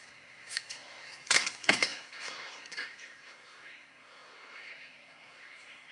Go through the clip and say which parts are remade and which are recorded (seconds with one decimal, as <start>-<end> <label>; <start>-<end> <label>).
0.0-5.9 remade